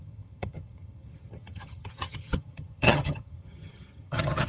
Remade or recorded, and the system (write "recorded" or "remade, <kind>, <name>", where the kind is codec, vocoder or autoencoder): remade, vocoder, HiFi-GAN